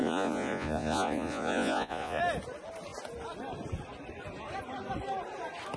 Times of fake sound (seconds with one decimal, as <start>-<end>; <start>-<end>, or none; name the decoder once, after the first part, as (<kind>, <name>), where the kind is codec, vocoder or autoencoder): 0.0-2.2 (vocoder, Vocos)